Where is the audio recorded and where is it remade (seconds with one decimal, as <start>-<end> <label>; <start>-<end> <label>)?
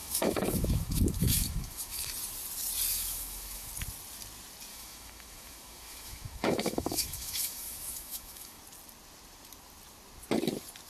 0.0-2.1 remade; 2.1-2.9 recorded; 2.9-3.7 remade; 3.7-4.7 recorded; 4.7-8.6 remade; 8.6-10.9 recorded